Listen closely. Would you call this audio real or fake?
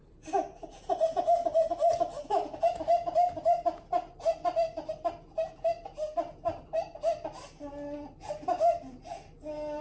real